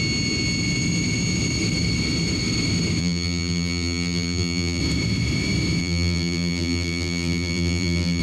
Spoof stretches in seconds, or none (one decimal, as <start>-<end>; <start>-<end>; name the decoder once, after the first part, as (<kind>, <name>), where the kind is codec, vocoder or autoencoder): 3.0-4.8 (vocoder, BigVGAN v2); 5.8-8.2